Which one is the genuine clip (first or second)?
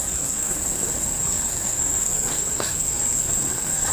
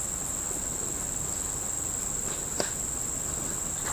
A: second